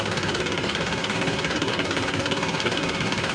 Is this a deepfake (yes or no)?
yes